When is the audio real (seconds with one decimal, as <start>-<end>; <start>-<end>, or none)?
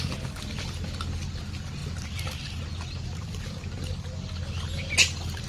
0.0-5.5